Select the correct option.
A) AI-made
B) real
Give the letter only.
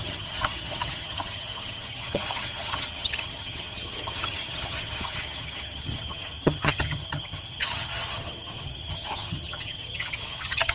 A